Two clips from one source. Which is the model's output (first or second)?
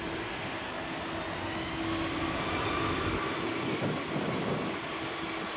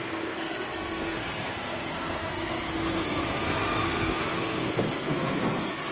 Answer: second